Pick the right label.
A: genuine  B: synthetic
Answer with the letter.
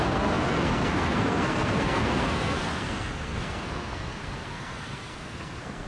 B